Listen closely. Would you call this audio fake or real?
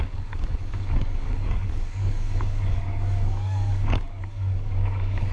fake